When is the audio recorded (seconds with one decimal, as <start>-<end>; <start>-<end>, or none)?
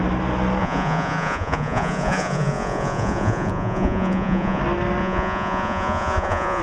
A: 0.0-0.6; 4.6-5.0